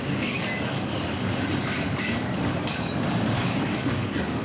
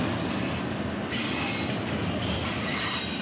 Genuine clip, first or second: second